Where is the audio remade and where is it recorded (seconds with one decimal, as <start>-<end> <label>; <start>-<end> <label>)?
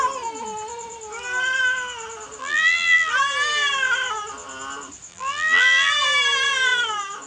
0.0-2.4 recorded; 2.4-3.1 remade; 3.1-5.1 recorded; 5.1-5.9 remade; 5.9-7.3 recorded